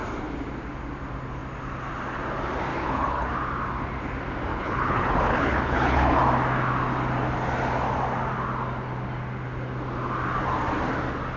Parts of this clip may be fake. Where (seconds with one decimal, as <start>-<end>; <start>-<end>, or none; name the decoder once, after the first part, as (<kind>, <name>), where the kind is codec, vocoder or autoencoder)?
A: 2.7-3.3 (codec, HILCodec); 4.5-6.2